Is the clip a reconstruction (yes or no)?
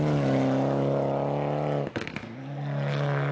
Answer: no